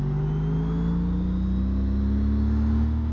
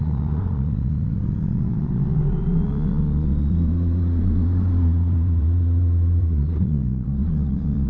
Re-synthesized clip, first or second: second